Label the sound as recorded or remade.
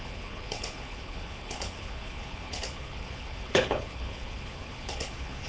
remade